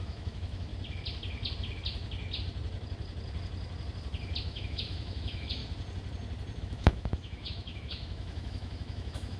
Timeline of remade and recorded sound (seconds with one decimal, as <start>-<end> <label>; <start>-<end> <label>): 0.0-0.7 remade; 0.7-4.4 recorded; 4.4-5.6 remade; 5.6-6.6 recorded; 6.6-9.4 remade